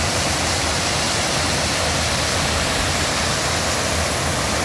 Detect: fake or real real